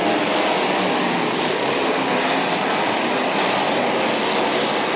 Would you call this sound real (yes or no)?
yes